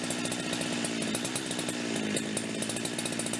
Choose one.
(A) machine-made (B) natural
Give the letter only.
B